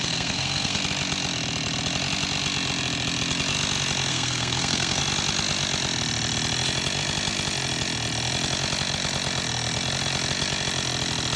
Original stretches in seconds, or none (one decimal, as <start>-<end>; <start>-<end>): 0.8-4.1; 5.0-11.4